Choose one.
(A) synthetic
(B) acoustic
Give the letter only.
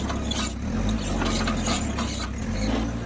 B